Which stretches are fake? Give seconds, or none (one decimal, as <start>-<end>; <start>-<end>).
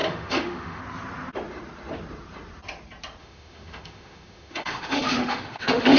0.0-0.8; 3.2-6.0